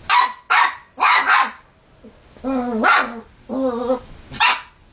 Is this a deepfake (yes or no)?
no